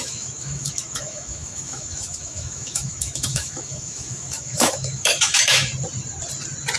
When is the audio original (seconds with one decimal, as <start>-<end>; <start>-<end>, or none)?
5.7-6.8

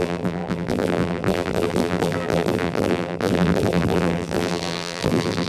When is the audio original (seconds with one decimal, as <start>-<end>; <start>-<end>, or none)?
none

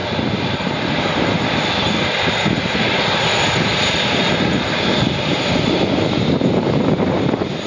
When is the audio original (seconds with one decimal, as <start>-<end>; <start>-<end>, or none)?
0.0-7.7

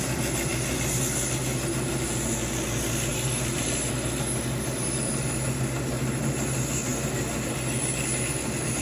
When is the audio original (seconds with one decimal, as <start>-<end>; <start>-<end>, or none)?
0.0-8.8

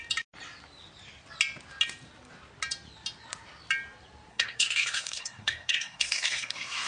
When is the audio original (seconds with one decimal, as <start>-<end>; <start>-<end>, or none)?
0.0-4.3

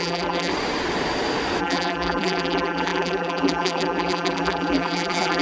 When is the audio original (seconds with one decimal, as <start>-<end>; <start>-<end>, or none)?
0.5-1.6

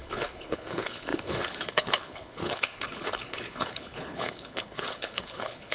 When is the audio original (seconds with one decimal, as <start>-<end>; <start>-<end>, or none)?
none

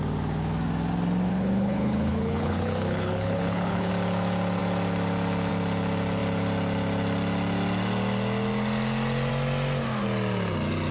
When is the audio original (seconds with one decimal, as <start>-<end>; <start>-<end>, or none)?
0.0-1.3; 3.9-10.9